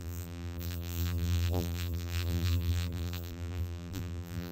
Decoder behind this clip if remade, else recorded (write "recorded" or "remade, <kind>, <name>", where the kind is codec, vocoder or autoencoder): remade, vocoder, BigVGAN v2